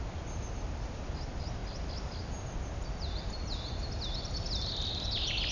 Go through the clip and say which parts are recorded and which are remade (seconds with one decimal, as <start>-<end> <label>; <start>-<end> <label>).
0.0-5.5 recorded